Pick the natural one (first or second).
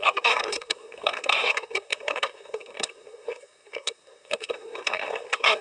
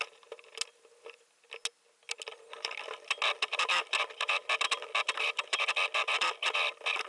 second